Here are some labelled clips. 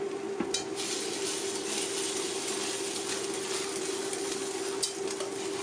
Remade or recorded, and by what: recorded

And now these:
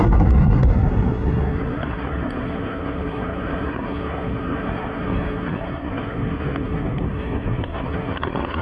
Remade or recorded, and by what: remade, codec, SNAC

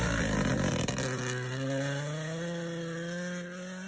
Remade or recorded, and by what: recorded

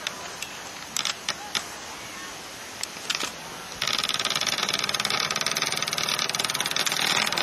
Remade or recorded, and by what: recorded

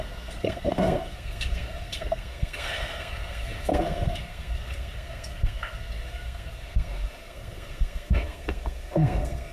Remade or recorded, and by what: remade, codec, SNAC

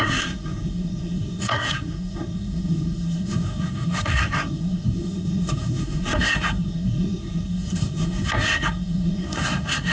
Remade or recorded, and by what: remade, codec, SNAC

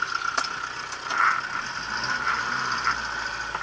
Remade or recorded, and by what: recorded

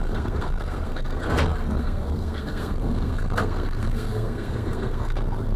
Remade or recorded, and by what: remade, codec, SNAC